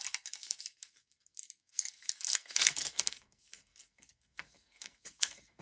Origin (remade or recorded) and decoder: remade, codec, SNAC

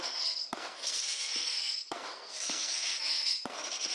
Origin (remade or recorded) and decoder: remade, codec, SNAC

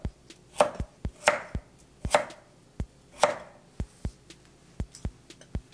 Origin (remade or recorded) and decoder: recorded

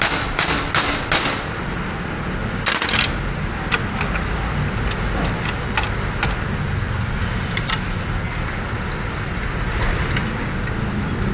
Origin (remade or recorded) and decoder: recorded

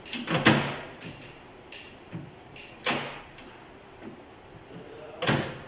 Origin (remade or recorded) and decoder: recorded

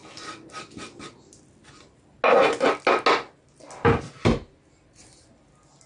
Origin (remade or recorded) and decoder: recorded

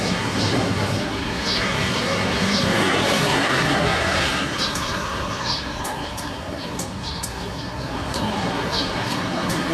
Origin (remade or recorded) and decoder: remade, codec, SNAC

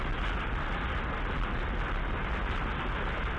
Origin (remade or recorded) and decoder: recorded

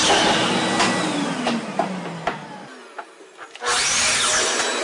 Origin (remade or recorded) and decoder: recorded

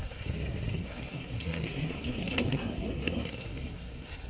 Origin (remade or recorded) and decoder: remade, codec, SNAC